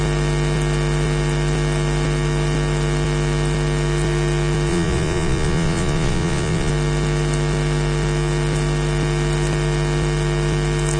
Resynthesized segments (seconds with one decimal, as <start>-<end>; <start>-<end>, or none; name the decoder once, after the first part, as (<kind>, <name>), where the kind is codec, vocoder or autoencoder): 4.7-6.7 (vocoder, Vocos)